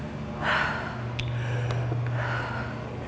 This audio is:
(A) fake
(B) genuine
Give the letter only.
B